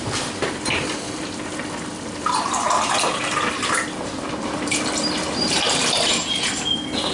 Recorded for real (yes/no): no